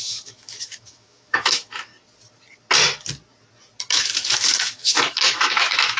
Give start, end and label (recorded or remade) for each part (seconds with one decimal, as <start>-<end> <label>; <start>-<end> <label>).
0.0-1.9 remade; 1.9-3.9 recorded; 3.9-6.0 remade